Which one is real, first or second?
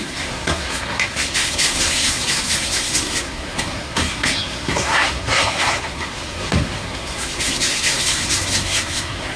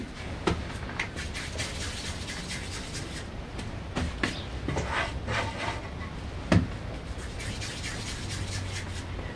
second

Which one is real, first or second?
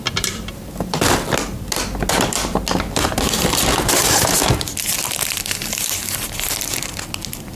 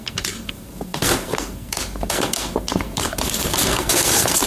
first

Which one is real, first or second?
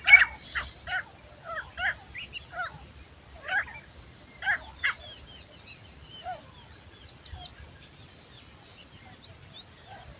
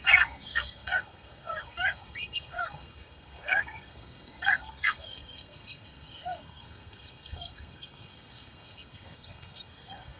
first